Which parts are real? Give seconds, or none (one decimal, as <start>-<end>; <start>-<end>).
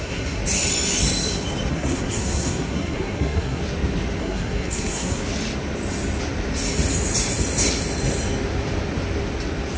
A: 0.4-1.7; 3.6-4.2; 5.2-9.8